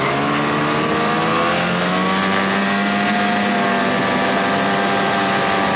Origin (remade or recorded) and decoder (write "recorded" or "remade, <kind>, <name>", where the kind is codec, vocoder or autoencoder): recorded